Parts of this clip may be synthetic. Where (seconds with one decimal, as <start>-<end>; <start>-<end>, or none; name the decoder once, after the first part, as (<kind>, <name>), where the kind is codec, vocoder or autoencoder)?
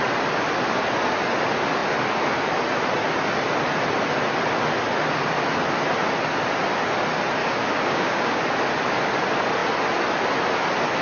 7.4-8.4 (codec, DAC)